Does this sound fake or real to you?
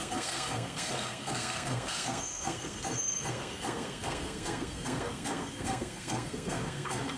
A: fake